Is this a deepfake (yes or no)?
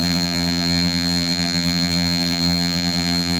yes